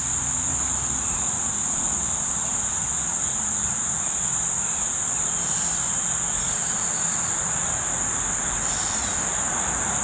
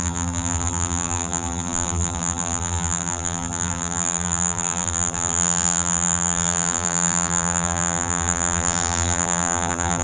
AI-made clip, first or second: second